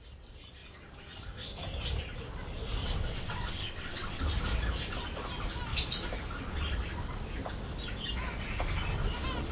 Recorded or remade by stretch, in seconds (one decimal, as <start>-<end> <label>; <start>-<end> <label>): 0.0-2.8 recorded; 2.8-4.2 remade; 4.2-9.5 recorded